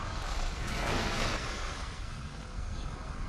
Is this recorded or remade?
remade